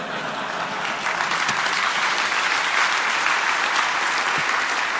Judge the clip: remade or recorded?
recorded